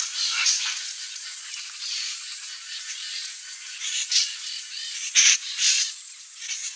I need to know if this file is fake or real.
fake